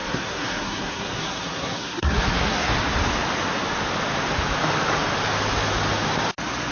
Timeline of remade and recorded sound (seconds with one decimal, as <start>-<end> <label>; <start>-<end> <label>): 0.0-2.7 remade; 2.7-6.7 recorded